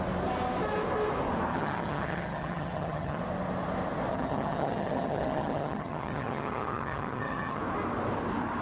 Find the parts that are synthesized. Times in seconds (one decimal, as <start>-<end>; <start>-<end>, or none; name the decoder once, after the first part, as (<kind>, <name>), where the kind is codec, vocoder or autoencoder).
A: 1.5-3.2 (vocoder, HiFi-GAN); 4.1-7.6